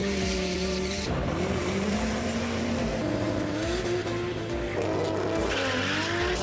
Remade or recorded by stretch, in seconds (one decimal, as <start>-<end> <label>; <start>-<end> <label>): 0.0-2.9 remade; 2.9-6.4 recorded